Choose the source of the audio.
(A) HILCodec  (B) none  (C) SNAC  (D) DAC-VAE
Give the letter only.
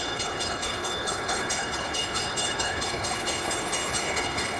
A